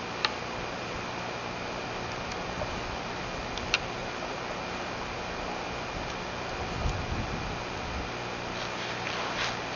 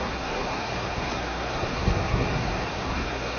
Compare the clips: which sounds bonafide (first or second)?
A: first